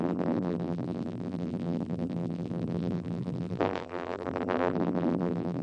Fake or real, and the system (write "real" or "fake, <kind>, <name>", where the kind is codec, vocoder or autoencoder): fake, vocoder, BigVGAN v2